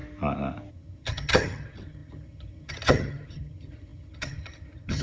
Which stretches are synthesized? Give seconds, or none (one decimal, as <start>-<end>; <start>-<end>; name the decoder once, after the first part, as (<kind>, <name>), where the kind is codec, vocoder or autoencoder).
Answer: 0.7-5.0 (vocoder, HiFi-GAN)